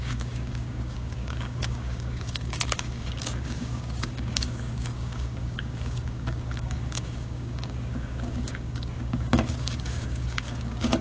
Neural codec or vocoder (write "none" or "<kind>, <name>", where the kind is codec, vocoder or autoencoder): codec, DAC